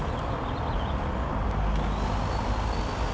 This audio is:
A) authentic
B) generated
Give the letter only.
A